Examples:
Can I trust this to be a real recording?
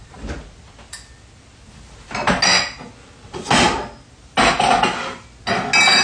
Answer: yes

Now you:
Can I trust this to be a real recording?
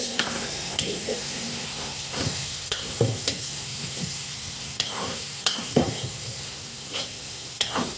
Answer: no